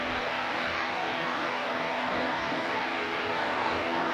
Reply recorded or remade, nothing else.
remade